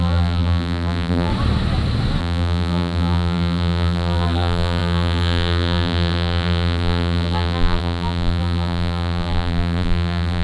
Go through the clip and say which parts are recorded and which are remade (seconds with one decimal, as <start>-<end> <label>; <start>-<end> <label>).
0.0-1.3 remade; 1.3-2.2 recorded; 2.2-10.4 remade